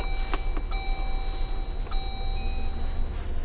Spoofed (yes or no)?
no